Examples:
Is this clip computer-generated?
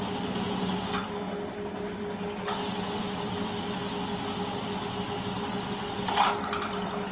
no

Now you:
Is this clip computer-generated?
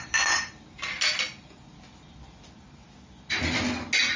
no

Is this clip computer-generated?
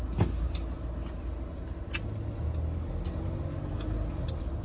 no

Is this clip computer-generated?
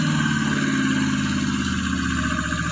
no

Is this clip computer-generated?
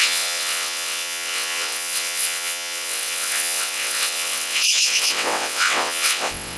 yes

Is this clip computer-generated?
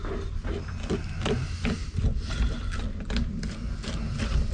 no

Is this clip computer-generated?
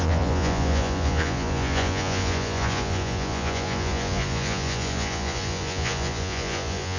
yes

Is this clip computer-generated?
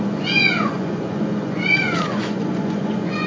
yes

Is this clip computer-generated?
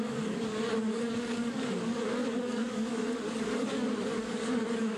yes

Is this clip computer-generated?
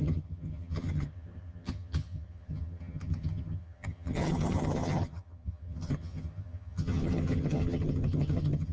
yes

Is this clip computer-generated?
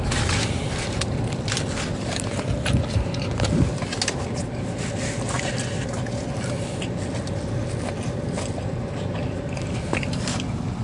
no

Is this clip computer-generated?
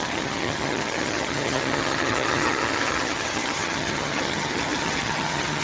yes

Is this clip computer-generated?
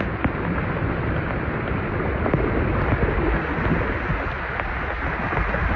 no